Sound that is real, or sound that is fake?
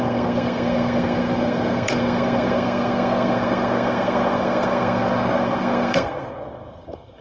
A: fake